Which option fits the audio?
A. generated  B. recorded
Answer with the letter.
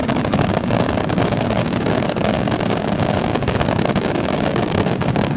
A